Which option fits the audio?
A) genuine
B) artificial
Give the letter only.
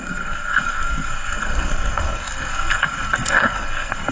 B